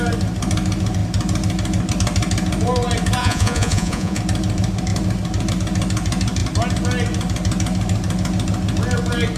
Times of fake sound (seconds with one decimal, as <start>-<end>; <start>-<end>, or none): 3.2-4.2